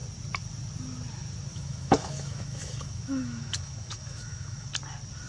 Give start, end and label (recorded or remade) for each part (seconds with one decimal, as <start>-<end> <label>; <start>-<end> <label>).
0.0-1.5 recorded; 1.5-4.7 remade; 4.7-5.3 recorded